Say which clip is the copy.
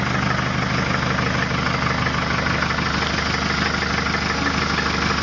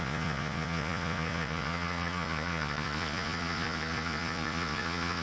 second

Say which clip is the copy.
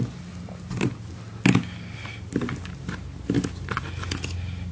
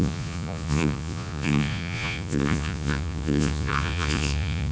second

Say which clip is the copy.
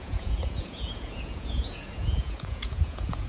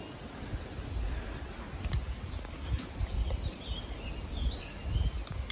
first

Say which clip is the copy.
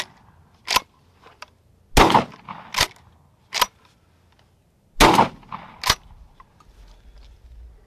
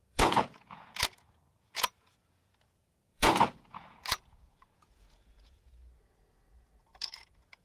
second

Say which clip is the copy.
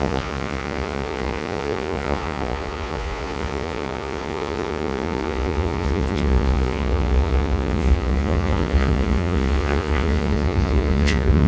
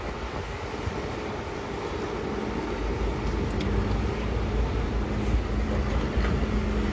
first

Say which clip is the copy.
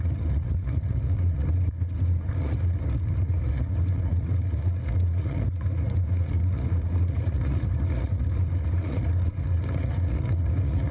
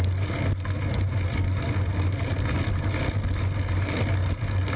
first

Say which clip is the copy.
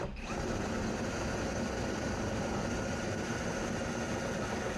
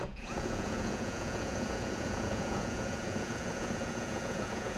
second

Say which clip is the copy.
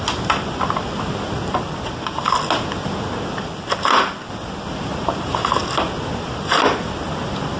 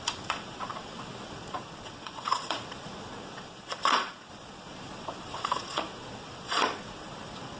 second